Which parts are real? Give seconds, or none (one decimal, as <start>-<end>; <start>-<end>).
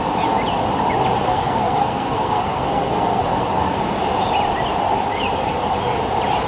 0.0-1.2; 3.8-6.5